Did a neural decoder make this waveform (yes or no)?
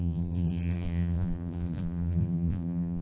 yes